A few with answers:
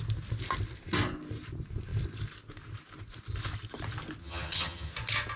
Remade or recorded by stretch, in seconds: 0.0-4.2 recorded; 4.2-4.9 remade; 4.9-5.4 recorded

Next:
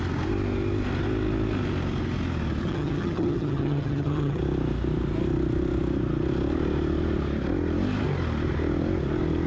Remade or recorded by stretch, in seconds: 0.0-2.6 recorded; 2.6-4.4 remade; 4.4-9.5 recorded

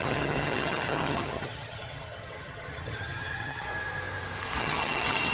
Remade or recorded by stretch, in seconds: 0.0-3.7 remade; 3.7-4.6 recorded; 4.6-5.3 remade

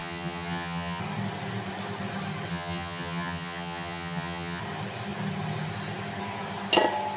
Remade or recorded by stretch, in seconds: 0.0-1.0 remade; 1.0-2.5 recorded; 2.5-4.6 remade; 4.6-7.2 recorded

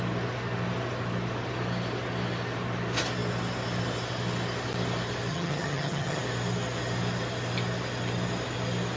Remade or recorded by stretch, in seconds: 0.0-5.3 recorded; 5.3-6.2 remade; 6.2-9.0 recorded

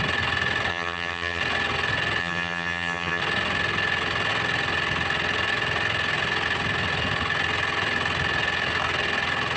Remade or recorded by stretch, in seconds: 0.0-0.7 recorded; 0.7-1.4 remade; 1.4-2.2 recorded; 2.2-3.2 remade; 3.2-9.6 recorded

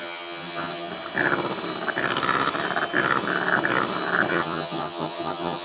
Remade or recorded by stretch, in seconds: 0.0-0.9 remade; 0.9-4.3 recorded; 4.3-5.6 remade